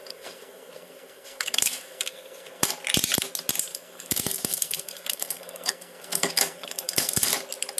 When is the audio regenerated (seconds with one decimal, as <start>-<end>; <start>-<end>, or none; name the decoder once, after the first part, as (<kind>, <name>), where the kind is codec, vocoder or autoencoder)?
0.0-2.7 (codec, SNAC); 3.7-7.3